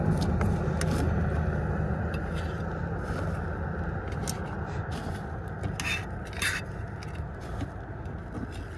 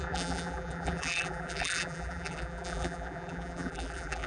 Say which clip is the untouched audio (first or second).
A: first